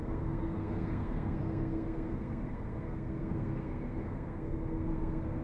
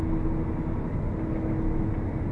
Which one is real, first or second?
second